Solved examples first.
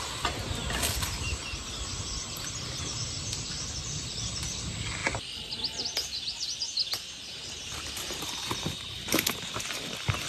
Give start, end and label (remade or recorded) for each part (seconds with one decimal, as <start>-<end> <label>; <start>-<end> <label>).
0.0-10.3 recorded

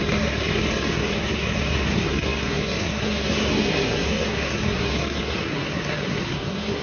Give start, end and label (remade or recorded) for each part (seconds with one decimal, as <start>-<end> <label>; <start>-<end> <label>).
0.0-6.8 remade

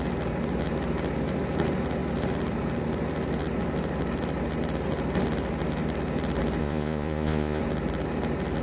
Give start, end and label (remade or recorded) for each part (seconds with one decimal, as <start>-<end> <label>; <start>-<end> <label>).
0.0-6.6 recorded; 6.6-7.6 remade; 7.6-8.6 recorded

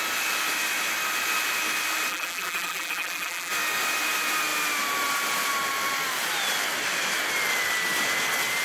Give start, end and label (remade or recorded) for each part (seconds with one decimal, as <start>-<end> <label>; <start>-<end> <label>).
0.0-2.1 recorded; 2.1-3.5 remade; 3.5-8.6 recorded